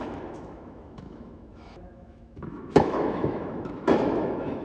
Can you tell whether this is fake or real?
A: fake